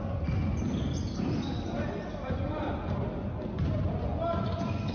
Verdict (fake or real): real